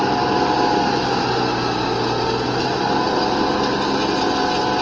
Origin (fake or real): real